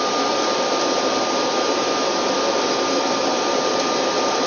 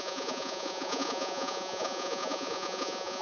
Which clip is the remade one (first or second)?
second